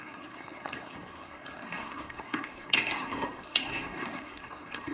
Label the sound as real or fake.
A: fake